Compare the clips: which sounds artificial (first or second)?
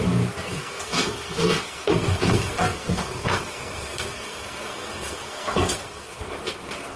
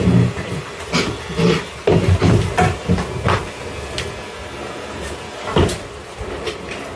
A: first